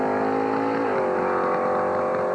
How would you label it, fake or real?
real